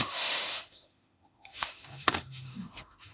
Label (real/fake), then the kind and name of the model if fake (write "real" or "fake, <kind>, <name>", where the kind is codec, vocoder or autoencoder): fake, autoencoder, DAC-VAE